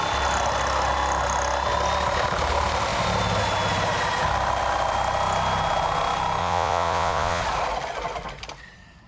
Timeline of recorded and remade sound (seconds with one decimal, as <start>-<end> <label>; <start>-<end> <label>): 0.0-6.4 recorded; 6.4-7.4 remade; 7.4-9.1 recorded